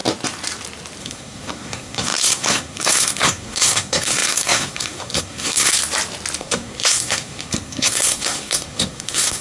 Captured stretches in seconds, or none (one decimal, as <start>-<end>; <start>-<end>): 0.0-1.0; 5.8-6.4